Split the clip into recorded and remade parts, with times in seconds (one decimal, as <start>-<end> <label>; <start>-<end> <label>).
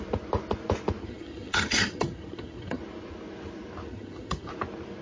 0.0-1.0 recorded; 1.0-2.8 remade; 2.8-3.9 recorded; 3.9-4.5 remade; 4.5-5.0 recorded